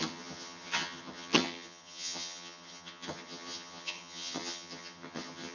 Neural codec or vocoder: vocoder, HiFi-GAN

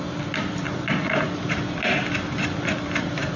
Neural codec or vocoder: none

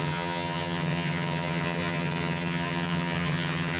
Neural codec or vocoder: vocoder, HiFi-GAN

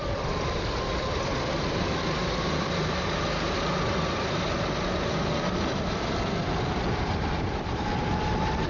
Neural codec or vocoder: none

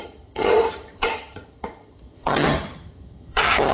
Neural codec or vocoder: vocoder, HiFi-GAN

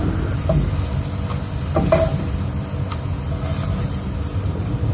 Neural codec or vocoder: none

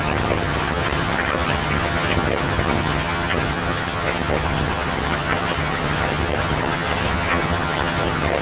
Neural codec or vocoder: vocoder, HiFi-GAN